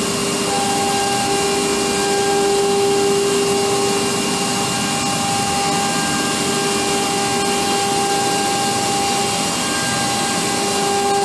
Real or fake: real